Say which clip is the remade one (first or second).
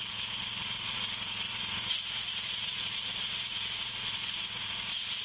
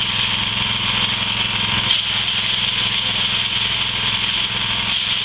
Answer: first